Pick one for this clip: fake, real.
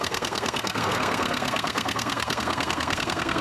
fake